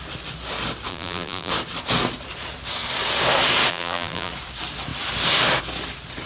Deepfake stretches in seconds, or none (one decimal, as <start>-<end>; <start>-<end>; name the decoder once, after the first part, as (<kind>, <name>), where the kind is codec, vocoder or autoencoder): 0.9-1.5 (vocoder, BigVGAN v2); 3.7-4.3